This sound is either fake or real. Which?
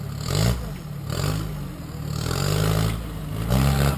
real